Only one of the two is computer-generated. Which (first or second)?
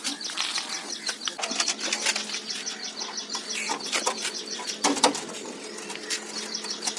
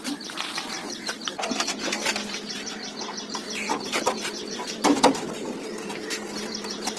second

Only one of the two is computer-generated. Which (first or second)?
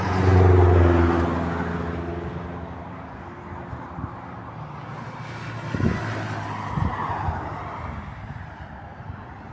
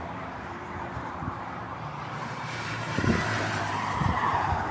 second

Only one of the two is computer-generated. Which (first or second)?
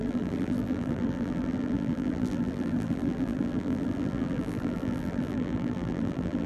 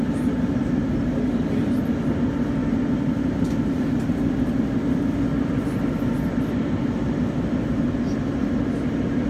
first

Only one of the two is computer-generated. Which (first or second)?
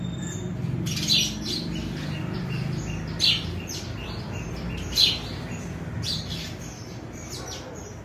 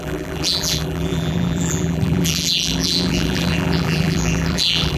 second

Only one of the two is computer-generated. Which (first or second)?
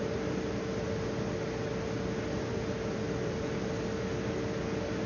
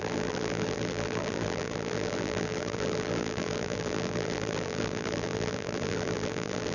second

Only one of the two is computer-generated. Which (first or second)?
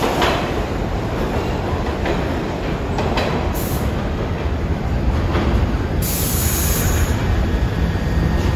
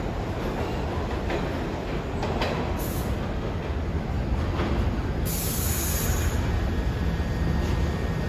first